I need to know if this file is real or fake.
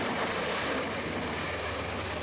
real